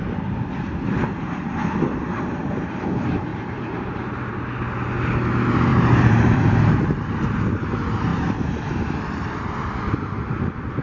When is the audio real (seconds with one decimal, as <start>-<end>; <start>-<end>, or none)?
0.0-3.3; 4.3-5.7; 6.7-8.1; 9.3-10.8